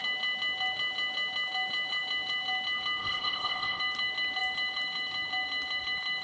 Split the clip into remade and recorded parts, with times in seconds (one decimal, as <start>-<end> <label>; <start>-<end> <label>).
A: 0.0-3.0 recorded; 3.0-3.8 remade; 3.8-6.2 recorded